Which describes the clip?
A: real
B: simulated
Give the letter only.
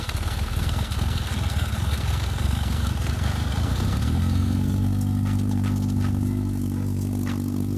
B